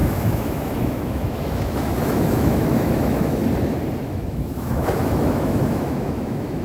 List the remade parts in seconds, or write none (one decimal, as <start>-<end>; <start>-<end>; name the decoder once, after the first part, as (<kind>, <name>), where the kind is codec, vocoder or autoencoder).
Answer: 0.0-3.4 (autoencoder, DAC-VAE); 4.0-6.6